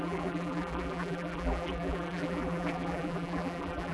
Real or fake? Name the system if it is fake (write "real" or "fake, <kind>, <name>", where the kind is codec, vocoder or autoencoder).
fake, vocoder, BigVGAN v2